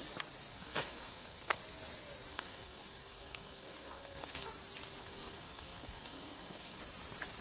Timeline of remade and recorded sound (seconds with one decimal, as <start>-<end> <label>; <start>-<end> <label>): 0.0-0.5 recorded; 0.5-1.6 remade; 1.6-2.3 recorded; 2.3-4.5 remade; 4.5-5.0 recorded; 5.0-6.8 remade; 6.8-7.4 recorded